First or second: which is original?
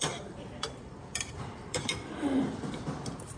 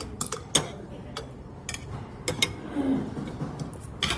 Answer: second